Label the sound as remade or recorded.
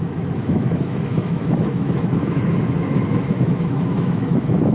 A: remade